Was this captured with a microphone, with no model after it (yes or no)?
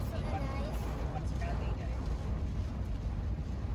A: yes